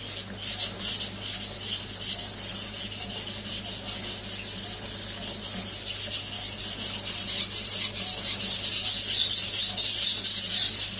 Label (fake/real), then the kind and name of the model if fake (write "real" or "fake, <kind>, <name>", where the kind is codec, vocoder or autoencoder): real